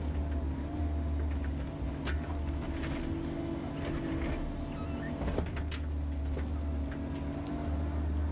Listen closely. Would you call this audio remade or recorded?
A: recorded